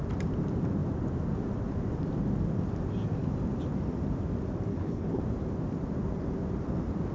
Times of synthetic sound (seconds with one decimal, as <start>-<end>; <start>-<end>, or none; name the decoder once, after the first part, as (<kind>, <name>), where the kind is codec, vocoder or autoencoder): 4.7-5.2 (codec, HILCodec)